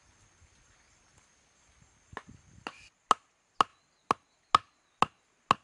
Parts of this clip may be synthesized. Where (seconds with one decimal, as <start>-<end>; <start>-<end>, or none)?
none